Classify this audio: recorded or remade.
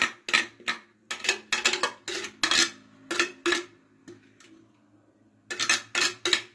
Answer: recorded